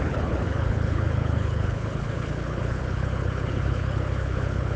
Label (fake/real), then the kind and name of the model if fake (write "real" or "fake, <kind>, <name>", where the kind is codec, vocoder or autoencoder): fake, codec, HILCodec